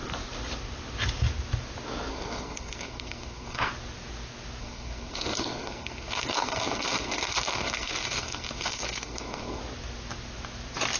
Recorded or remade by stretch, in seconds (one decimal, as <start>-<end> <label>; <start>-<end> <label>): 0.0-2.1 recorded; 2.1-3.7 remade; 3.7-4.6 recorded; 4.6-9.6 remade; 9.6-11.0 recorded